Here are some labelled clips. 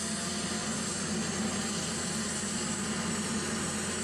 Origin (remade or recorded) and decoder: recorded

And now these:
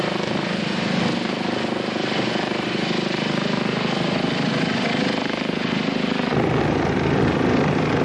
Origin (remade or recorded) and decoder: recorded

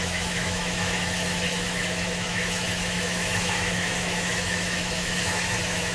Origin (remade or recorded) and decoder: remade, autoencoder, DAC-VAE